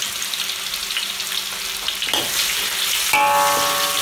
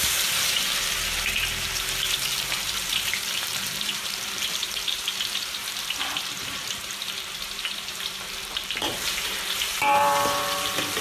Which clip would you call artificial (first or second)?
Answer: second